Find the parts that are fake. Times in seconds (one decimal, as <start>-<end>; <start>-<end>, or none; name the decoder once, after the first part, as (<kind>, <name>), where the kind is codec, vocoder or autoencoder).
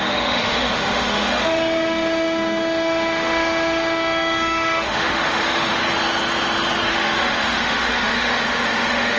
0.0-5.8 (autoencoder, DAC-VAE); 6.9-9.2